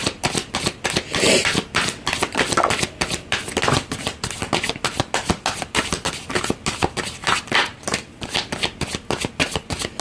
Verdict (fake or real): real